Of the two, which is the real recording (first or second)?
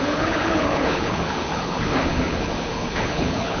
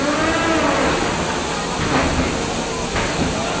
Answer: second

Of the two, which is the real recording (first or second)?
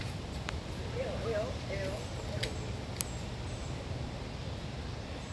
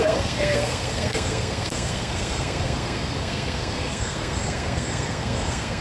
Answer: first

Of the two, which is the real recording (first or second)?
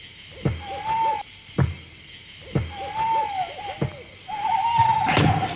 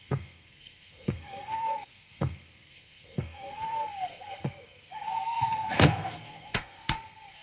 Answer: first